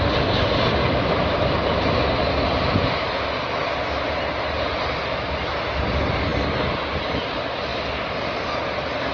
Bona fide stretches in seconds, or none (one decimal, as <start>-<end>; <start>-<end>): 0.0-9.1